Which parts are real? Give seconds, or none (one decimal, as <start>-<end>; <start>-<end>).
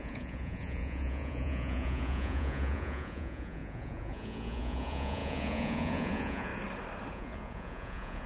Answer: 6.5-7.1